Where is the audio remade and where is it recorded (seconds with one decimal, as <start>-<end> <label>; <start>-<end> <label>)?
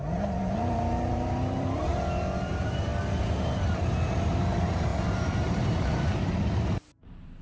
0.0-1.9 remade; 1.9-2.5 recorded; 2.5-7.4 remade